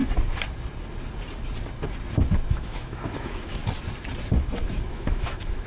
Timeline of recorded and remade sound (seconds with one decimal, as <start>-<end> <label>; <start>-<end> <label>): 0.0-2.5 recorded; 2.5-3.6 remade; 3.6-4.9 recorded; 4.9-5.7 remade